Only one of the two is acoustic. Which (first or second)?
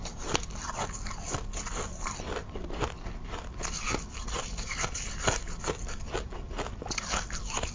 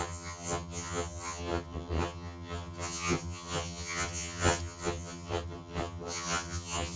first